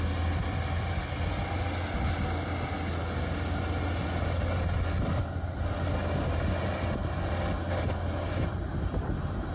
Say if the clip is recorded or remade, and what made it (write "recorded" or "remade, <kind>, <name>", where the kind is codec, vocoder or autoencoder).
recorded